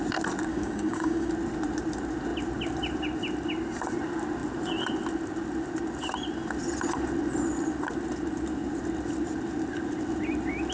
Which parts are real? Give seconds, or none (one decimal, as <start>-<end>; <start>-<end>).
0.0-0.5; 1.3-10.7